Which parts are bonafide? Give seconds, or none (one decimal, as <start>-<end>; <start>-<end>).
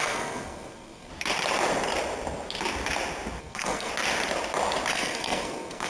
1.1-3.4; 3.9-4.9